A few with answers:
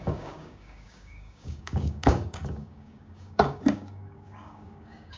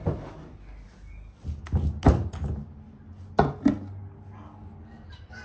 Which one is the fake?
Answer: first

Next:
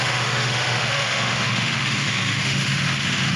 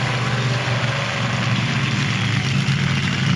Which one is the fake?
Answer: first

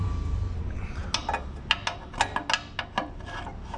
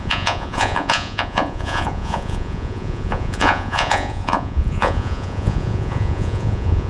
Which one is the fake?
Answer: second